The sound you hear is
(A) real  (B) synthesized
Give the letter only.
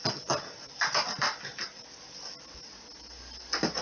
A